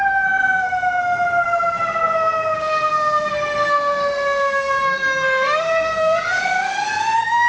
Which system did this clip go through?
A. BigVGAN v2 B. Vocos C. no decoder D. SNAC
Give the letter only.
D